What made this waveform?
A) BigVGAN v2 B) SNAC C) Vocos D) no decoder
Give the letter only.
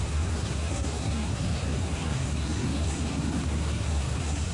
B